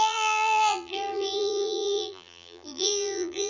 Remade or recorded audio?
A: remade